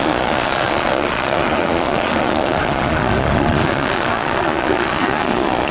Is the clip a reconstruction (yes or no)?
yes